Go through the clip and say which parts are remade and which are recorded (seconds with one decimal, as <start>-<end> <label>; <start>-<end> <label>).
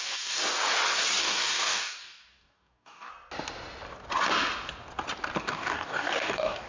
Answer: 0.0-0.4 remade; 0.4-1.2 recorded; 1.2-3.1 remade; 3.1-5.4 recorded; 5.4-6.7 remade